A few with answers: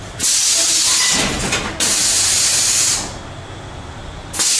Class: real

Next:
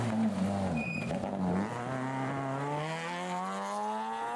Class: real